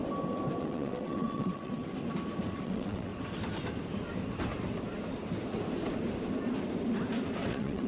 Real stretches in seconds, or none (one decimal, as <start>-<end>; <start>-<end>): 0.0-0.6; 1.8-2.6; 3.1-7.5